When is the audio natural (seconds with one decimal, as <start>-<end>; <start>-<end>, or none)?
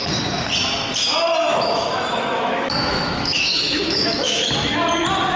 0.0-1.5; 4.5-5.4